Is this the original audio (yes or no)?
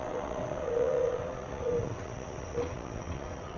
no